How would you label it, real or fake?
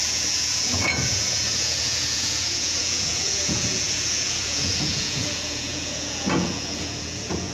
fake